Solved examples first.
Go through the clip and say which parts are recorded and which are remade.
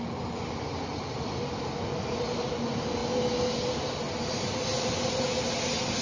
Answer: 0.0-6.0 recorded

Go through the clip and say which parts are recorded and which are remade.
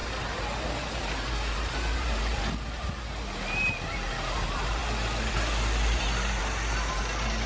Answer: 0.0-3.0 remade; 3.0-7.5 recorded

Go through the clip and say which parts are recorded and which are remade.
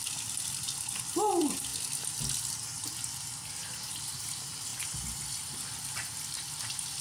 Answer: 0.0-1.7 remade; 1.7-3.9 recorded; 3.9-4.7 remade; 4.7-7.0 recorded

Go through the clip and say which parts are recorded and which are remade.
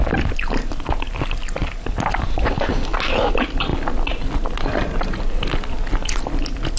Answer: 0.0-6.8 recorded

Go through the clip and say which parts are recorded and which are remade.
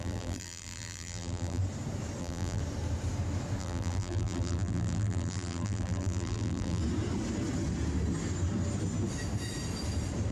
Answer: 0.0-1.6 remade; 1.6-2.2 recorded; 2.2-2.6 remade; 2.6-3.6 recorded; 3.6-6.8 remade; 6.8-10.3 recorded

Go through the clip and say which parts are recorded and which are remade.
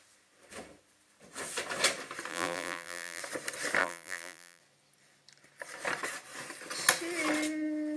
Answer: 0.0-2.3 recorded; 2.3-3.2 remade; 3.2-3.8 recorded; 3.8-4.6 remade; 4.6-8.0 recorded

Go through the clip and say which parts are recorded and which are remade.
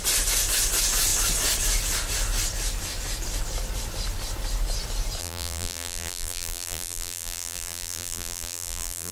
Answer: 0.0-5.2 recorded; 5.2-9.1 remade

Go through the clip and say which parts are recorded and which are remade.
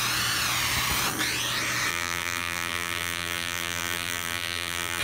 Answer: 0.0-1.9 recorded; 1.9-5.0 remade